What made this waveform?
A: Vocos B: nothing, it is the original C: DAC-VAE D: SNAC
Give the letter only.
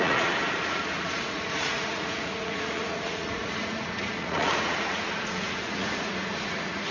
A